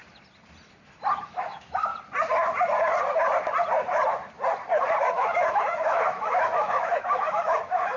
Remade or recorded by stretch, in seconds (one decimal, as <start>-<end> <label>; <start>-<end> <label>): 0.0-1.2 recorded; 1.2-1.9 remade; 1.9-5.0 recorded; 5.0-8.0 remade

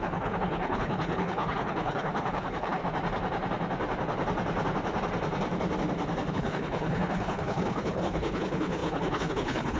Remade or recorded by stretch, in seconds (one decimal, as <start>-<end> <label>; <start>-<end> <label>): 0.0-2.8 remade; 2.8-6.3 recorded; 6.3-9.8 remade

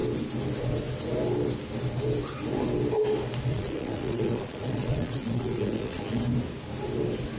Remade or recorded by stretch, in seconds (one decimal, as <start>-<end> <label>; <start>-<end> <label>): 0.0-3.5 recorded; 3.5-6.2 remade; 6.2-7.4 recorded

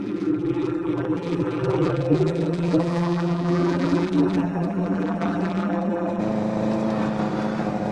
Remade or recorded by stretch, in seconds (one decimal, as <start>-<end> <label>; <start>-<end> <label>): 0.0-6.2 remade; 6.2-7.9 recorded